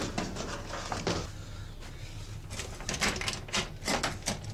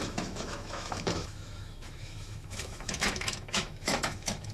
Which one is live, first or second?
first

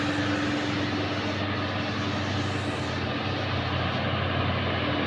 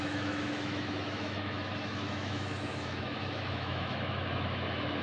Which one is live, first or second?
first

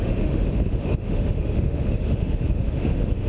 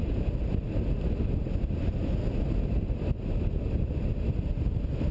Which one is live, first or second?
second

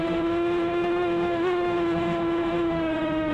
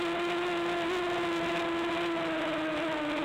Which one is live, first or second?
second